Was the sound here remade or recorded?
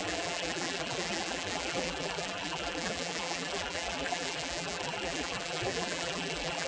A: remade